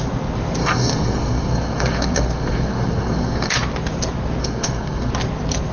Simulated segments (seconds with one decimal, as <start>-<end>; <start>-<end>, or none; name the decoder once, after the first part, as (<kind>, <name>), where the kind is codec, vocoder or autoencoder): 0.6-3.5 (codec, SNAC); 4.4-5.1

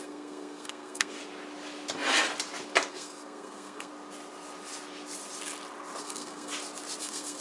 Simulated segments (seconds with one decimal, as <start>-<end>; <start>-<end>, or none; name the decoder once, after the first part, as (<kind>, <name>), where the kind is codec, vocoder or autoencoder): 0.0-1.2 (codec, SNAC); 2.9-3.9; 6.0-6.5; 7.0-7.4

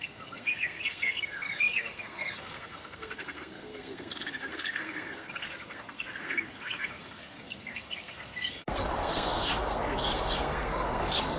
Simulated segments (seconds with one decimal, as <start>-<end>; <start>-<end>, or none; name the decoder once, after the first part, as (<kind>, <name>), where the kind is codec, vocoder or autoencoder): 0.0-11.4 (codec, SNAC)

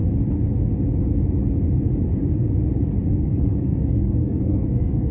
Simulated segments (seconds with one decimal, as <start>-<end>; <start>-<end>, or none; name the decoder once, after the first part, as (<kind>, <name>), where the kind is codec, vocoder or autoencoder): 3.1-5.1 (codec, SNAC)